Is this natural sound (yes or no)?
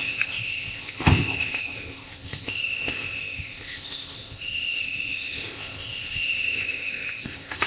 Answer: no